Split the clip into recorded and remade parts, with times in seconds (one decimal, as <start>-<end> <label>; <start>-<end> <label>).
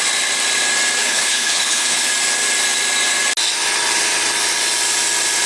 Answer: 0.0-1.0 recorded; 1.0-2.1 remade; 2.1-5.5 recorded